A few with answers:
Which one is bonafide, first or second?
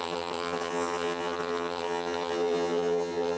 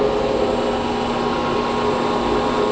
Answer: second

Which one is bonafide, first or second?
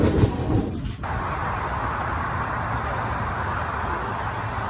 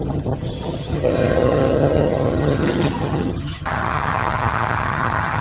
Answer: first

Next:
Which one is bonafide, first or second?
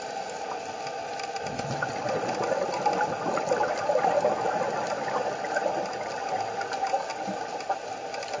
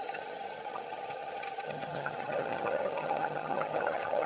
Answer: first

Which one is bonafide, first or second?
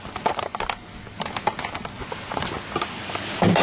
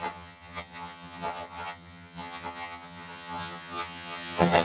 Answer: first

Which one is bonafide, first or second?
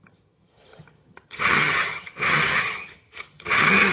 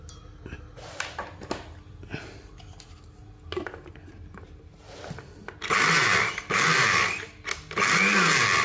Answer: second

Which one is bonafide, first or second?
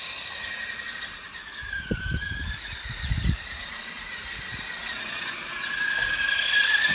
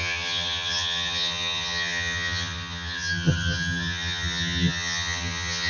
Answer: first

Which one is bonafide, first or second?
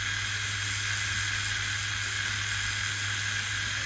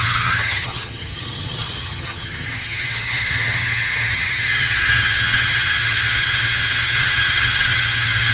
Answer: first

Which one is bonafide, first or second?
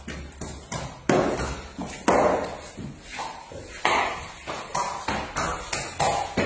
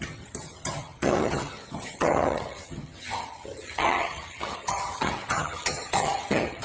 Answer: first